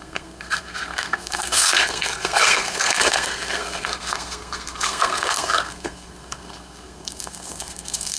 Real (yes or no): no